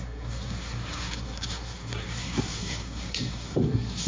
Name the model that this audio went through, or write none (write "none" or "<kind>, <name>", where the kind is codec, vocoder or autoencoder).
codec, SNAC